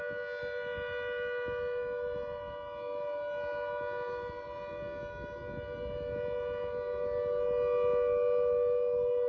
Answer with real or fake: real